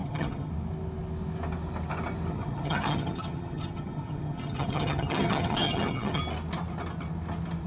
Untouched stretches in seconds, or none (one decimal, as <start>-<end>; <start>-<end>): 0.5-2.3; 6.2-7.7